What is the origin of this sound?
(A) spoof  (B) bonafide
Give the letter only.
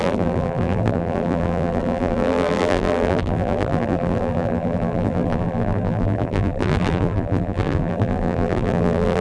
A